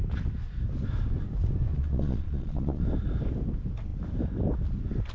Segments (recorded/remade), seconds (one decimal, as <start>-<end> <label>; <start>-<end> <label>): 0.0-1.7 recorded; 1.7-2.8 remade; 2.8-5.1 recorded